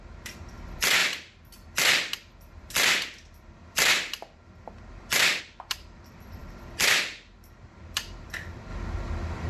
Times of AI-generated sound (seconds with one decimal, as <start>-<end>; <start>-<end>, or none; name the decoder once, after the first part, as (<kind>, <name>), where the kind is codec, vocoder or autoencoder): 0.0-8.7 (vocoder, BigVGAN v2)